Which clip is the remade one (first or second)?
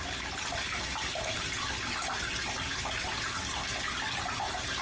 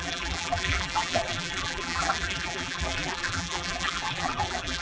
second